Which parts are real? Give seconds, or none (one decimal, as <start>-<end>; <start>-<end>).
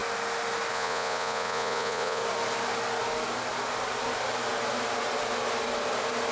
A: 0.0-0.7; 2.2-6.3